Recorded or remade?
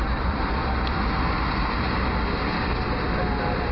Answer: recorded